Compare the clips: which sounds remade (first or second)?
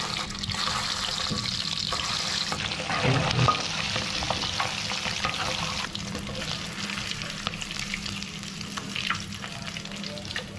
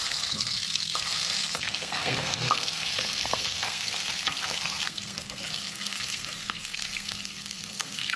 second